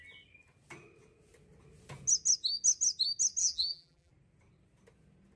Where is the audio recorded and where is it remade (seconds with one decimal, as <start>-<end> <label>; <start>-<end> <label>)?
0.0-3.4 recorded; 3.4-4.1 remade; 4.1-5.4 recorded